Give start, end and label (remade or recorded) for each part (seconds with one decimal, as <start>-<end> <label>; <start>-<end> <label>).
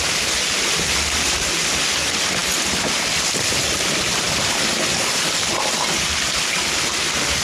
0.0-7.4 recorded